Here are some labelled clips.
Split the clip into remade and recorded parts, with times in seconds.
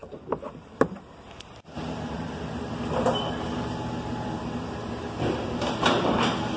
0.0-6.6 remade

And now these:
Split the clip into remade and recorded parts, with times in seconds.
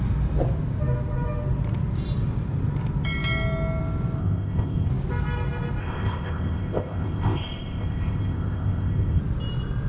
0.0-4.2 recorded; 4.2-4.9 remade; 4.9-5.8 recorded; 5.8-9.2 remade; 9.2-9.9 recorded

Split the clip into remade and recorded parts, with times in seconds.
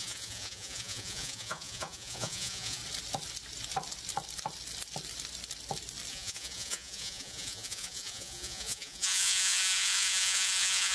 0.0-2.8 remade; 2.8-6.1 recorded; 6.1-10.9 remade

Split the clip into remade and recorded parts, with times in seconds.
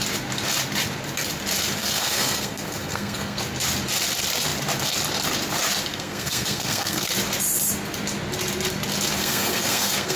0.0-1.8 recorded; 1.8-3.4 remade; 3.4-5.9 recorded; 5.9-7.1 remade; 7.1-9.2 recorded; 9.2-10.2 remade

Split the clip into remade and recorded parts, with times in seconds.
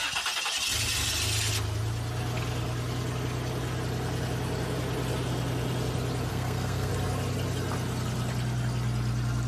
0.0-6.3 recorded; 6.3-6.9 remade; 6.9-9.5 recorded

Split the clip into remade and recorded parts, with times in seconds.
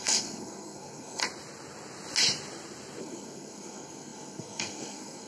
0.0-1.2 remade; 1.2-3.0 recorded; 3.0-5.3 remade